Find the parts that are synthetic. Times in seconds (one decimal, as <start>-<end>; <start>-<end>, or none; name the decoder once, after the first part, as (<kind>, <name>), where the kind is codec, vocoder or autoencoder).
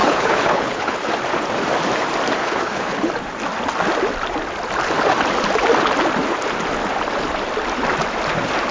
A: 0.0-1.1 (codec, HILCodec); 2.4-3.1